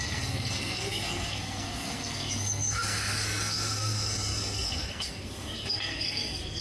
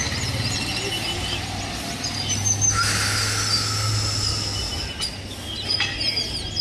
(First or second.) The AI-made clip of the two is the first